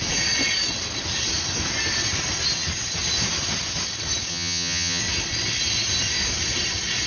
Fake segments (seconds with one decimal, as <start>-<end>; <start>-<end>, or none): 4.3-5.0